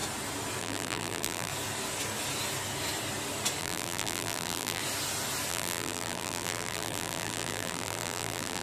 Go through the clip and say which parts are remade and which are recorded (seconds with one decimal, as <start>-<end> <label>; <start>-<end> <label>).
0.0-0.6 recorded; 0.6-1.5 remade; 1.5-3.6 recorded; 3.6-4.8 remade; 4.8-5.5 recorded; 5.5-8.6 remade

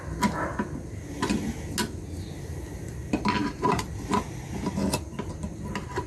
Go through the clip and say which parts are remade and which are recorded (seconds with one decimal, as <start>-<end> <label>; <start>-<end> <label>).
0.0-3.4 recorded; 3.4-5.3 remade; 5.3-6.1 recorded

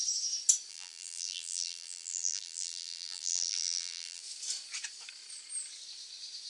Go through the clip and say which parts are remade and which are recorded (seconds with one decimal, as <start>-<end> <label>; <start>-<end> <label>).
0.0-0.7 recorded; 0.7-4.2 remade; 4.2-6.5 recorded

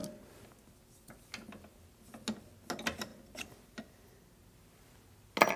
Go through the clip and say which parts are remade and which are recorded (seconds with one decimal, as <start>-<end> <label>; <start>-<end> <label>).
0.0-5.6 recorded

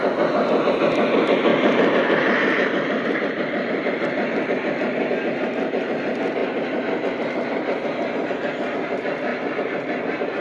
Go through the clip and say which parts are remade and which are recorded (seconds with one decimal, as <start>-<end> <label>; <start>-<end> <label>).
0.0-1.5 recorded; 1.5-5.1 remade; 5.1-9.3 recorded; 9.3-10.4 remade

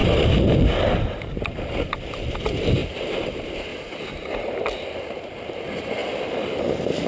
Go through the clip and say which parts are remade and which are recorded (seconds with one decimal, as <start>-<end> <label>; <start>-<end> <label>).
0.0-2.8 remade; 2.8-3.3 recorded; 3.3-3.7 remade; 3.7-5.0 recorded; 5.0-6.0 remade; 6.0-7.1 recorded

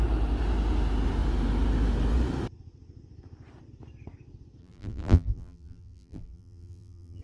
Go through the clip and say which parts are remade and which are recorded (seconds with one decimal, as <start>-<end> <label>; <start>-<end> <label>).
0.0-4.6 recorded; 4.6-7.2 remade

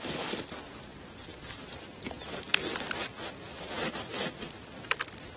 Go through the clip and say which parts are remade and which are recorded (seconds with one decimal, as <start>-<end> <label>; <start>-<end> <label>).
0.0-5.4 recorded